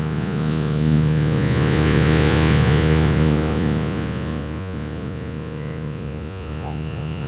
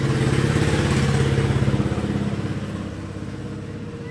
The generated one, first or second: first